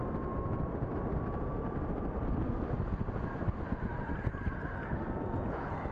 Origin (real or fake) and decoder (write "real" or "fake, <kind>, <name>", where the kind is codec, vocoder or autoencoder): real